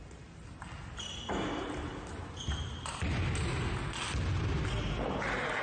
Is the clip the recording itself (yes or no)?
yes